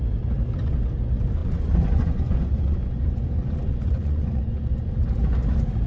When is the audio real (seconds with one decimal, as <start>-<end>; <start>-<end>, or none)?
0.0-1.4; 4.9-5.9